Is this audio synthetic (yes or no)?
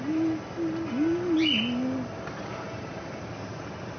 no